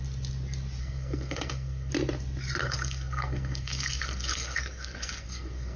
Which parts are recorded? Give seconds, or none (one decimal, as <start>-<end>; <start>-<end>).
0.0-0.8; 1.9-2.6